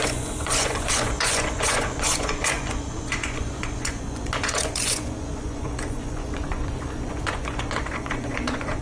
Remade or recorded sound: remade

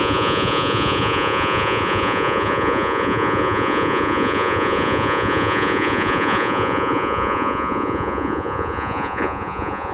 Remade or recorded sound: remade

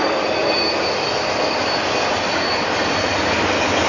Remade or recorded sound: recorded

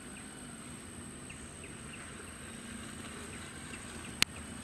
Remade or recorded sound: recorded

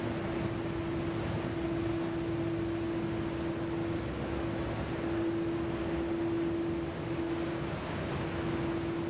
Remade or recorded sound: recorded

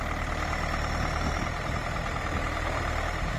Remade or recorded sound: recorded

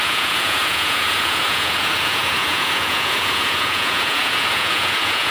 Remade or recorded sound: remade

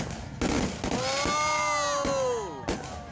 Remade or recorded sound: recorded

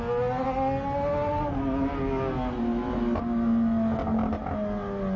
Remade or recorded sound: recorded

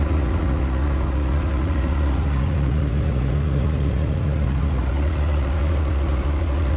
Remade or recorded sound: remade